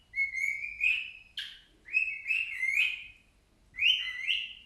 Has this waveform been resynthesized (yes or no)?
no